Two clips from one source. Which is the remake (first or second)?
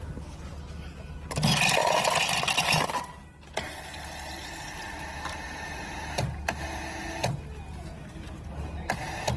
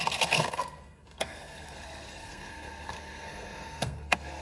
second